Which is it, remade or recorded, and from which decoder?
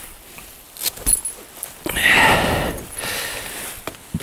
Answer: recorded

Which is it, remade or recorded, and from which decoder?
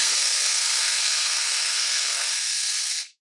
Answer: remade, codec, SNAC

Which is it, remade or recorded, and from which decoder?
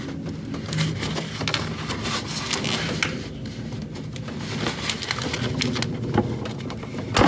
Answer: recorded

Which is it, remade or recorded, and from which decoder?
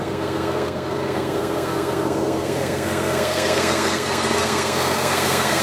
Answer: remade, codec, SNAC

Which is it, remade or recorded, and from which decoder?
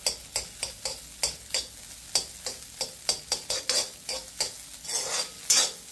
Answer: recorded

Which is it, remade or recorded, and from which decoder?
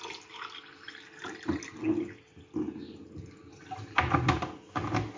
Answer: recorded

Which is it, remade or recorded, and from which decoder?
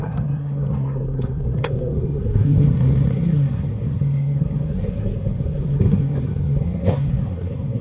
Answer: remade, codec, SNAC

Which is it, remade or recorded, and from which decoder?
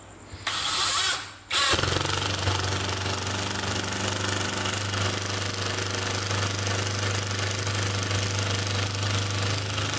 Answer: recorded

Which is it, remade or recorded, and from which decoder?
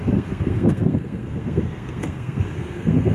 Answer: remade, codec, SNAC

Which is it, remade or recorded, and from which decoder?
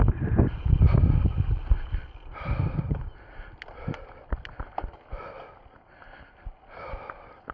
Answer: recorded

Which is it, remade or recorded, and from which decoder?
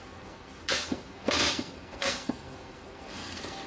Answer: remade, codec, SNAC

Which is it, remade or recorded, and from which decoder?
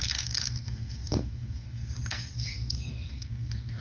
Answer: remade, codec, SNAC